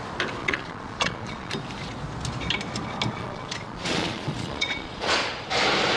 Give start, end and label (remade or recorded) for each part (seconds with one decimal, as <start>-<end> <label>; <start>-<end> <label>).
0.0-0.4 recorded; 0.4-1.5 remade; 1.5-3.1 recorded; 3.1-5.3 remade; 5.3-6.0 recorded